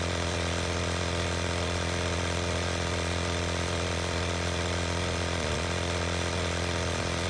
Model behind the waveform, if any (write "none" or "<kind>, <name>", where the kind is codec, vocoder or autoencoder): vocoder, Vocos